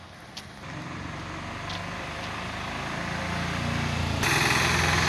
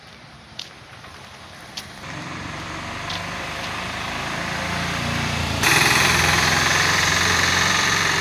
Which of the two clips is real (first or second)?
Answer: first